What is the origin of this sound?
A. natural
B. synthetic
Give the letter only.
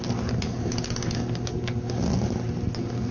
A